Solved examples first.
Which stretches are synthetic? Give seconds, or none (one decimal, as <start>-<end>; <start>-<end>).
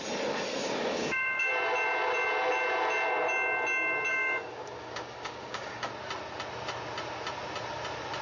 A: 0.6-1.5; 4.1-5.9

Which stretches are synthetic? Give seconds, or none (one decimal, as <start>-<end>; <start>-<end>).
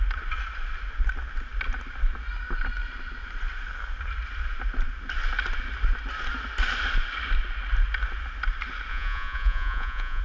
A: 8.9-10.2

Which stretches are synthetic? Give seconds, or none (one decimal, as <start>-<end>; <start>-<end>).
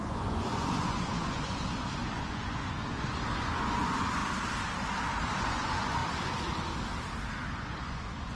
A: 0.0-4.2; 5.4-6.0; 7.5-8.3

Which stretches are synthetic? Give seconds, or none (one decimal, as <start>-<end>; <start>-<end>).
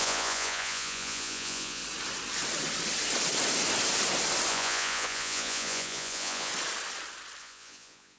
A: 0.0-1.8; 4.5-6.5; 7.4-8.2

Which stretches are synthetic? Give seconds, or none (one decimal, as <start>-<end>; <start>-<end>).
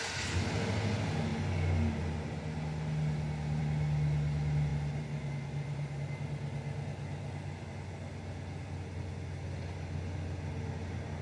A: none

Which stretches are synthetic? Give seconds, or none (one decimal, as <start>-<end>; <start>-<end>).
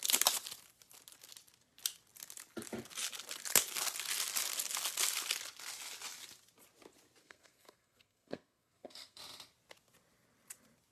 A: 7.2-9.2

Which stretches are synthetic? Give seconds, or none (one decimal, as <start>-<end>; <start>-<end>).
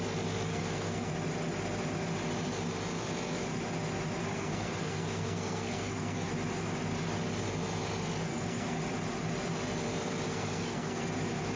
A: 0.5-1.1; 4.2-6.3; 8.3-8.8; 10.3-11.1